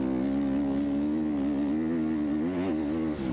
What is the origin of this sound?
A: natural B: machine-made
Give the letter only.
A